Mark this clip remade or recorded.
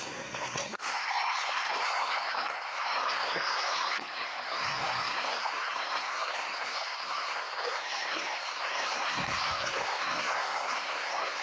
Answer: remade